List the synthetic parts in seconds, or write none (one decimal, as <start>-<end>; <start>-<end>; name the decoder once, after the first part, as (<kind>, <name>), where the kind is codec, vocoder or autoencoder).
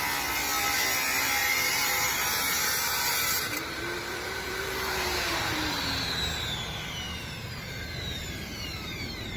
1.4-5.8 (vocoder, BigVGAN v2); 7.1-9.4